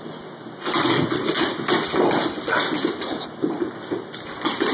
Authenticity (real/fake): real